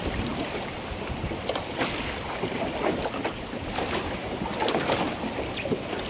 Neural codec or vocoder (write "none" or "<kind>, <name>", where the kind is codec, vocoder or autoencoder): vocoder, BigVGAN v2